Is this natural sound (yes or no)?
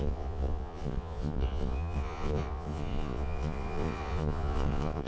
no